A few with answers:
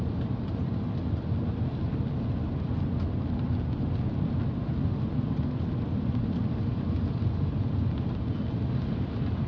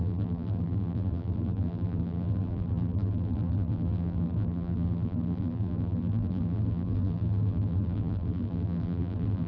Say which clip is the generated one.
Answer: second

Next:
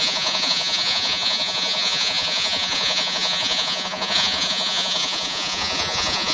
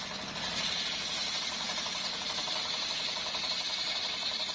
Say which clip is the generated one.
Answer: first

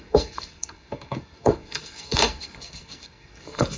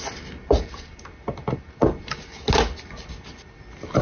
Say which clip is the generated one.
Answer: first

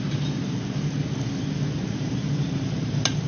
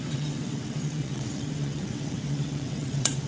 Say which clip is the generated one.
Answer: second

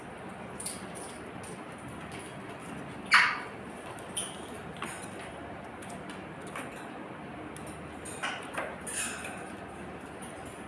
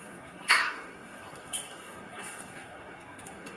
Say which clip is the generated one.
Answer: second